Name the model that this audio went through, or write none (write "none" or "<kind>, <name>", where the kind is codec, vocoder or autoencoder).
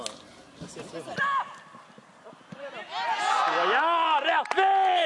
none